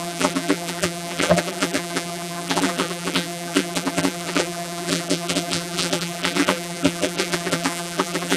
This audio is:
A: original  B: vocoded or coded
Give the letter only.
B